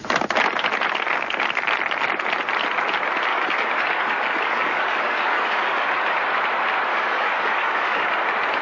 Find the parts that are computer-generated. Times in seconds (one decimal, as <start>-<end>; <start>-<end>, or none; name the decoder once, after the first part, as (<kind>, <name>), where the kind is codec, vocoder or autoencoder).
3.3-5.9 (codec, DAC); 6.9-8.1